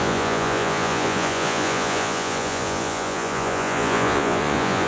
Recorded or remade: remade